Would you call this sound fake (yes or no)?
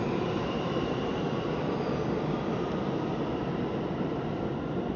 yes